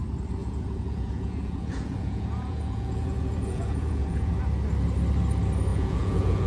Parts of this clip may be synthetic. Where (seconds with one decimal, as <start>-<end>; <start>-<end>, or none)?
0.4-4.3; 5.7-6.5